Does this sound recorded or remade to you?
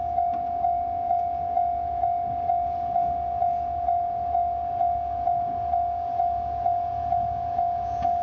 remade